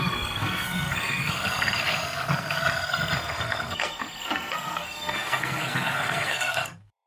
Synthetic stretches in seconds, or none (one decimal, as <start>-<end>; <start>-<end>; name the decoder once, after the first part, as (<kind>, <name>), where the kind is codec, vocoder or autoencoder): 0.0-7.1 (codec, SNAC)